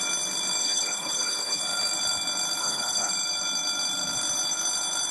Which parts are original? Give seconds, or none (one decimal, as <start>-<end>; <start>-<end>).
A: 0.0-0.6; 1.6-2.6; 3.1-5.1